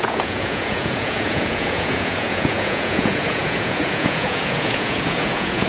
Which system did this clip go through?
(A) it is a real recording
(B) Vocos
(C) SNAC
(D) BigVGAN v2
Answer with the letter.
B